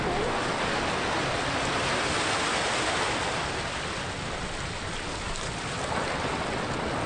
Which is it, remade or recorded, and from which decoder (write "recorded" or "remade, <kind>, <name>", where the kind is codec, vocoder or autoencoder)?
recorded